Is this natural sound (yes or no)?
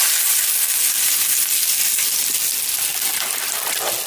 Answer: yes